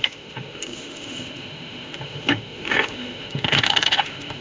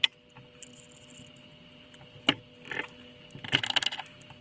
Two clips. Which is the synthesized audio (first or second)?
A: first